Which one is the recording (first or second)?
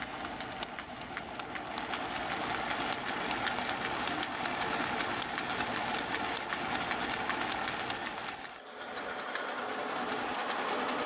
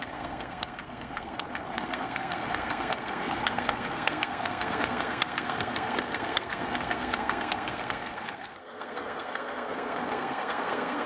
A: first